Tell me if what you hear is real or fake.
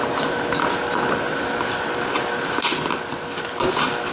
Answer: real